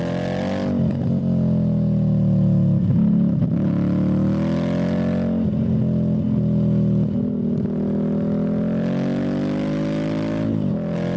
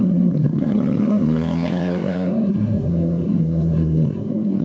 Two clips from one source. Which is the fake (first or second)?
second